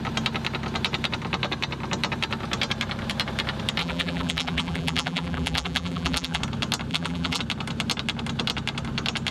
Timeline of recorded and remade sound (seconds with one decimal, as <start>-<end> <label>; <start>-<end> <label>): 0.0-3.8 recorded; 3.8-6.4 remade; 6.4-6.9 recorded; 6.9-7.4 remade; 7.4-9.3 recorded